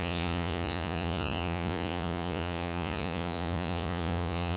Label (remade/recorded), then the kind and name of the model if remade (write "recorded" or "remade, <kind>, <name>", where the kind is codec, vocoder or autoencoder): remade, vocoder, Vocos